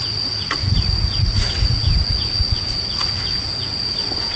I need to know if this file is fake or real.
fake